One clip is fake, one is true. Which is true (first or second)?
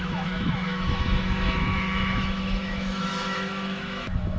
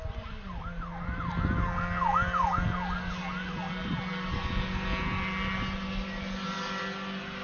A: second